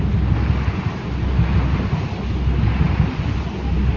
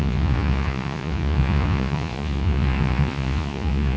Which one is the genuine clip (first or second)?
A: first